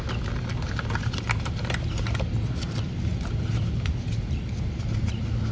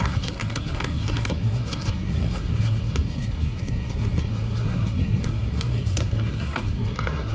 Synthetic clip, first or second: second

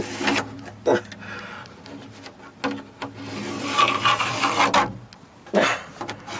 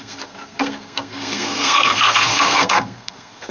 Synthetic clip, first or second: second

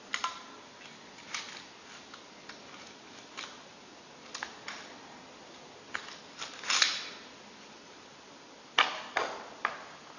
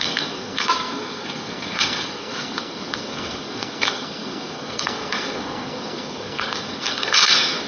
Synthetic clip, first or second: second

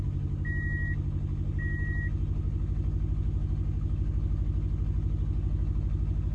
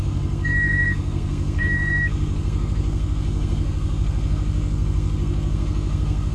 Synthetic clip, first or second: second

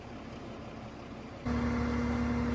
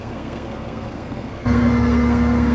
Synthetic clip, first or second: second